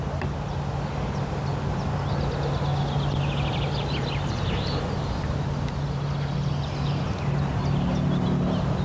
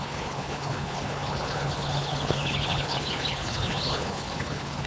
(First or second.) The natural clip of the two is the first